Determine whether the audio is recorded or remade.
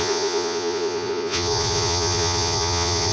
remade